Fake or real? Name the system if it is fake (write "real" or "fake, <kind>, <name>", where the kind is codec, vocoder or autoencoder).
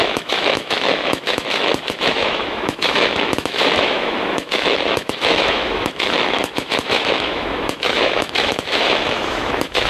fake, autoencoder, DAC-VAE